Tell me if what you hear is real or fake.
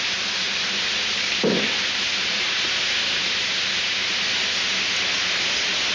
real